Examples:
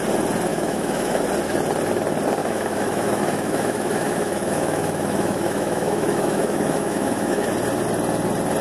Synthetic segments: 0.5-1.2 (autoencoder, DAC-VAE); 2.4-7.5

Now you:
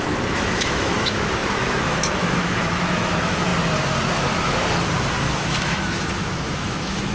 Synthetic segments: 0.0-3.5 (autoencoder, DAC-VAE); 5.3-7.1

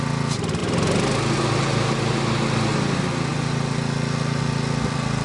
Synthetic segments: none